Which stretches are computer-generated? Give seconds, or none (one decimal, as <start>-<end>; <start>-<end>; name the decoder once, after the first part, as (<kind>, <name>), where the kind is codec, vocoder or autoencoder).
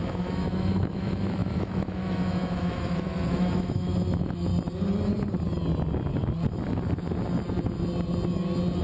0.0-4.5 (autoencoder, DAC-VAE)